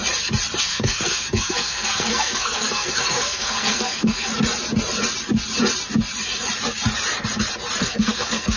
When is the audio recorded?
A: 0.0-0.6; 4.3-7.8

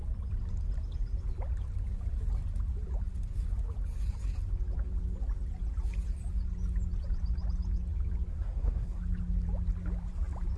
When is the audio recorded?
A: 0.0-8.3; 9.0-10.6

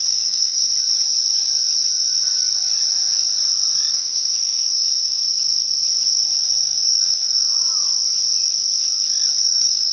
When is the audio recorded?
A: 0.7-3.9; 5.2-6.4; 7.6-9.4

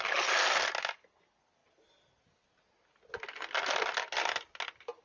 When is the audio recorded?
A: 0.0-5.0

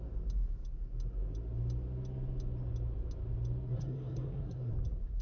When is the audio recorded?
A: 0.0-3.7; 4.7-5.2

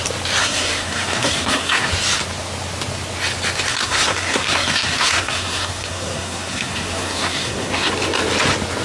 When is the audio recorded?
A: 0.0-0.4; 1.9-3.7; 7.9-8.8

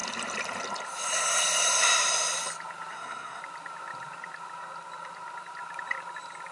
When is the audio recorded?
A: 0.0-2.9; 3.4-6.5

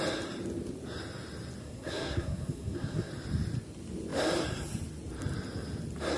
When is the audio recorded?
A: 0.0-1.6; 3.1-6.2